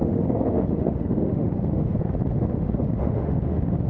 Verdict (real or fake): fake